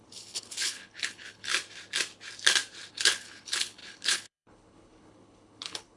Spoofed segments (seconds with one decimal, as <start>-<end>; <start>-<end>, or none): 0.0-1.5; 2.9-6.0